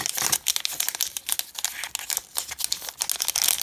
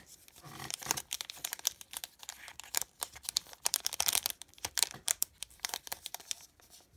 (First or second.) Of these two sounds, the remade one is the second